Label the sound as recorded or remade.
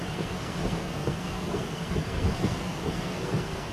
remade